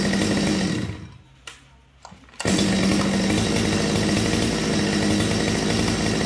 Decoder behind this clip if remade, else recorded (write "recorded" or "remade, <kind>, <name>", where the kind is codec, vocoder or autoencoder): recorded